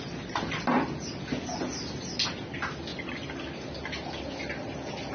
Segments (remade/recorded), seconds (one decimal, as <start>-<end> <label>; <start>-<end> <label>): 0.0-5.1 recorded